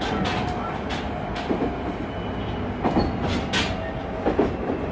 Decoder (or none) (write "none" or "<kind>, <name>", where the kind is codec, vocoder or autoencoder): none